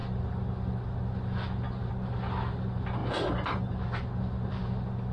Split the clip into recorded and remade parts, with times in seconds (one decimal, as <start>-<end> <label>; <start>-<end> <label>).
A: 0.0-5.1 recorded